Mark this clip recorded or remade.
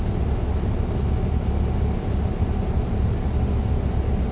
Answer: recorded